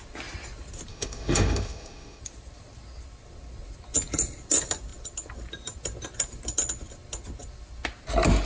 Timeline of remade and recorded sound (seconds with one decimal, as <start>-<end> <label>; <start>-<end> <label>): 0.0-0.9 recorded; 0.9-2.2 remade; 2.2-8.5 recorded